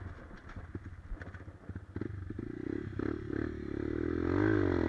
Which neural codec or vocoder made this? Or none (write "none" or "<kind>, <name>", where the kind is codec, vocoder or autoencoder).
none